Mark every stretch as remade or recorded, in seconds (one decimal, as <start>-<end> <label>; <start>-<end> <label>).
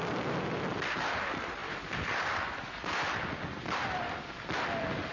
0.0-5.1 remade